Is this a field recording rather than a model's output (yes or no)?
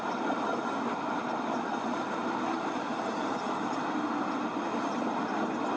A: yes